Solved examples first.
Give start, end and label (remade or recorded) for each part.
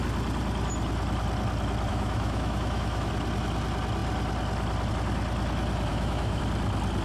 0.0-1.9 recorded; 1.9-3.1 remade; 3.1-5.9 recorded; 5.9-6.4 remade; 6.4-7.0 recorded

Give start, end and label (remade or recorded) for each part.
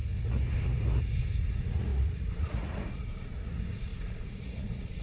0.0-5.0 remade